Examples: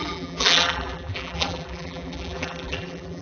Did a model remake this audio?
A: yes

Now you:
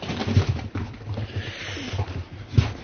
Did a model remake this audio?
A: no